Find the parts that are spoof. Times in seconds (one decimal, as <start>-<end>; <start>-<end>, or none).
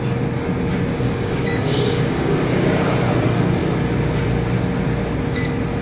0.9-2.3